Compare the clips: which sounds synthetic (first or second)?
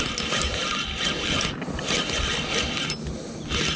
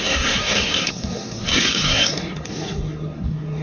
second